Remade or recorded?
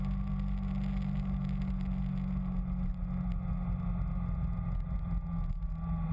recorded